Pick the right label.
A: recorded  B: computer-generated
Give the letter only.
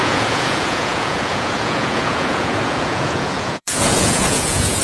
B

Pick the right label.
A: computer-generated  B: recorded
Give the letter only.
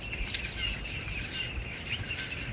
B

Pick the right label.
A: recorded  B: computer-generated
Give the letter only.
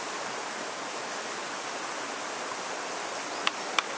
A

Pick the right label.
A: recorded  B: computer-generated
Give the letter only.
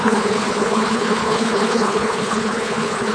B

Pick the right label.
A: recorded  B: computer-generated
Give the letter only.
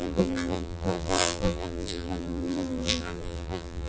B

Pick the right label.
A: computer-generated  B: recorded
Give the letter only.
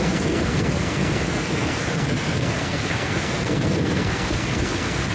A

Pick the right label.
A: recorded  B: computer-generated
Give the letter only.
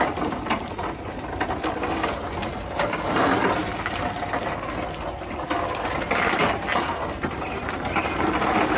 A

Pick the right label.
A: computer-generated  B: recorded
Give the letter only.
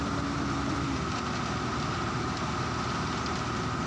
B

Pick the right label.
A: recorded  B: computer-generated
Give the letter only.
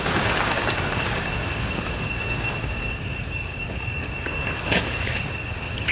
B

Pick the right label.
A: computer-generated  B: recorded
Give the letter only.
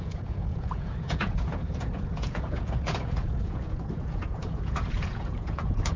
A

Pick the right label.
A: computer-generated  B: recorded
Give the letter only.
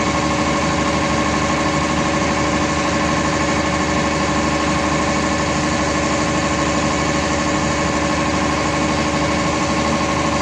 B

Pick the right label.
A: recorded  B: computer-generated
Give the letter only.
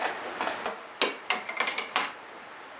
A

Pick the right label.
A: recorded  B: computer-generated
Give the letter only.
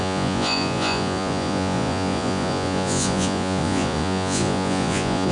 B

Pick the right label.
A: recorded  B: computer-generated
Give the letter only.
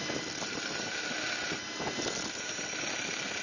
A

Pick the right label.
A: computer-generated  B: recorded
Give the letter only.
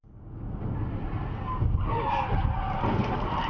B